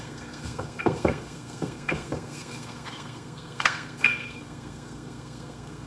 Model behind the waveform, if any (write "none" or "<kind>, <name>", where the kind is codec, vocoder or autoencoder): codec, SNAC